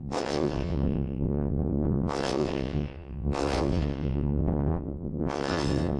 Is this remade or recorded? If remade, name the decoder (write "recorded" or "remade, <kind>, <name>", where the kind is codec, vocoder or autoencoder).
remade, vocoder, WaveNeXt